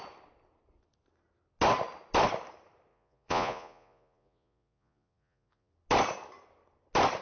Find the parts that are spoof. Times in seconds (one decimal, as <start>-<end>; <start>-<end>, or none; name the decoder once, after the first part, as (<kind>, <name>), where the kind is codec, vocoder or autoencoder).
2.9-5.7 (vocoder, Vocos)